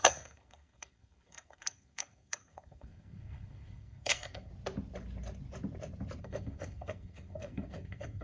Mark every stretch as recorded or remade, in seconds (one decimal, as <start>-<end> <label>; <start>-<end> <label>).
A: 0.0-4.5 remade; 4.5-6.2 recorded; 6.2-8.2 remade

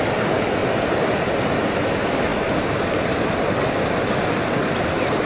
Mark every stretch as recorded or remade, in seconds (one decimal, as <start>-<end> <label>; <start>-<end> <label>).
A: 0.0-5.3 recorded

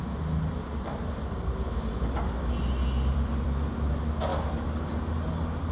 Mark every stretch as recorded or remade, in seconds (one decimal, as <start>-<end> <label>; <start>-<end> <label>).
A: 0.0-0.9 recorded; 0.9-3.9 remade; 3.9-5.7 recorded

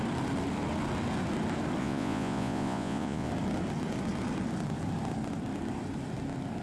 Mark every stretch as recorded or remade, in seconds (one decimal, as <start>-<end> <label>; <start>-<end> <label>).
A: 0.0-1.8 recorded; 1.8-3.3 remade; 3.3-6.6 recorded

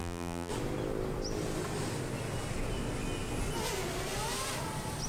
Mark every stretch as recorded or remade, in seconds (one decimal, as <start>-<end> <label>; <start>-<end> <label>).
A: 0.0-0.5 remade; 0.5-5.1 recorded

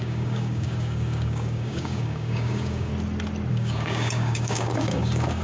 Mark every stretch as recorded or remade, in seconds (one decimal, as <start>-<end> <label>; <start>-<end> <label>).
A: 0.0-2.9 remade; 2.9-3.5 recorded; 3.5-5.4 remade

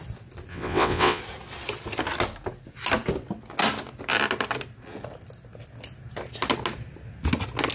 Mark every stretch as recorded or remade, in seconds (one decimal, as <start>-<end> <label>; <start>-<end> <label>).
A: 0.0-0.5 recorded; 0.5-1.2 remade; 1.2-7.7 recorded